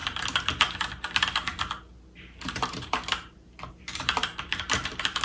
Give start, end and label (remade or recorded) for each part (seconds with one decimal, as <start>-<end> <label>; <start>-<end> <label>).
0.0-2.5 recorded; 2.5-5.2 remade